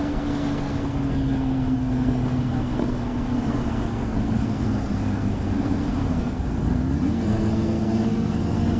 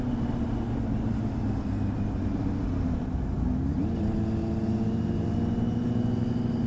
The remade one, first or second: first